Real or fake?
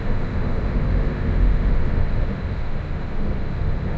fake